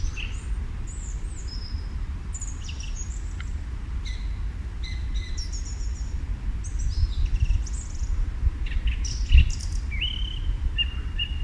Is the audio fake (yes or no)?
yes